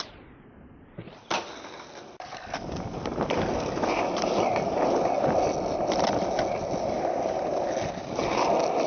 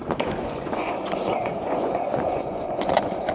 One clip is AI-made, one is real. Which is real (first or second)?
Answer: first